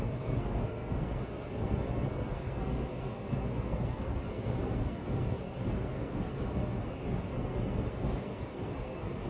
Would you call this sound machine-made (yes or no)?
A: yes